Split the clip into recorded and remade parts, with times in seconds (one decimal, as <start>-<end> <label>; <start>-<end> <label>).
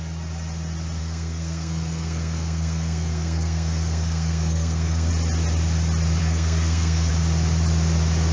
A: 0.0-1.0 recorded; 1.0-5.1 remade; 5.1-6.2 recorded; 6.2-7.1 remade; 7.1-8.3 recorded